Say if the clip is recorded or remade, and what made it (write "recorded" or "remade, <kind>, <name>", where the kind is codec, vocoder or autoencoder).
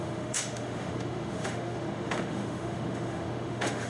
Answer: remade, autoencoder, DAC-VAE